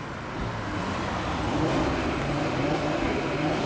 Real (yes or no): yes